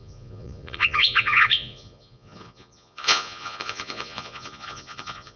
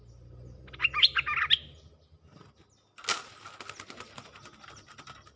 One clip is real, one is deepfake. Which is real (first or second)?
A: second